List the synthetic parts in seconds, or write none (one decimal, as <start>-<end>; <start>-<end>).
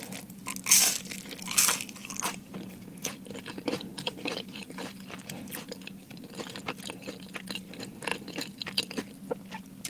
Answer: 3.9-4.9